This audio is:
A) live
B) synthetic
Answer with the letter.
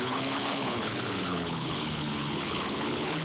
B